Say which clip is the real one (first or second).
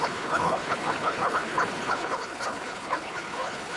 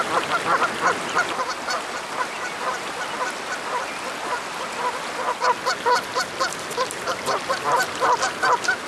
second